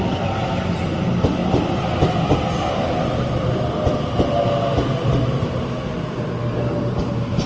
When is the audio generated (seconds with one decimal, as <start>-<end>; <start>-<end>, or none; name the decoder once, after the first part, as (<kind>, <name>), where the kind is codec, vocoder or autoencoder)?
6.4-7.1 (codec, DAC)